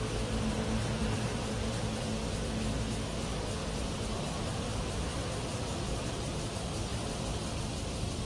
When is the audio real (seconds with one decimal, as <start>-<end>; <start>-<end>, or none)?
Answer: 0.0-1.0; 1.7-3.6; 6.5-6.9; 7.6-8.2